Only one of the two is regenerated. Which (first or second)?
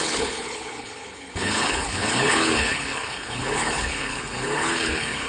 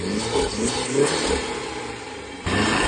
first